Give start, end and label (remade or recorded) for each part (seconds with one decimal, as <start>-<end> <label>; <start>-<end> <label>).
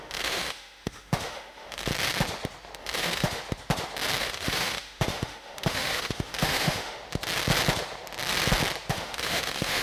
0.0-1.9 remade; 1.9-2.8 recorded; 2.8-3.4 remade; 3.4-4.2 recorded; 4.2-7.0 remade; 7.0-8.9 recorded; 8.9-9.8 remade